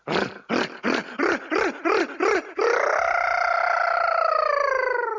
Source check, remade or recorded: recorded